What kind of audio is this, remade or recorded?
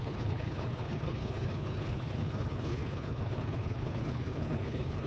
remade